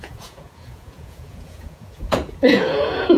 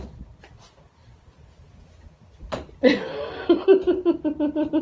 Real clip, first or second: second